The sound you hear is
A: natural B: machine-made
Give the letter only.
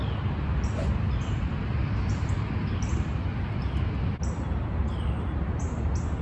A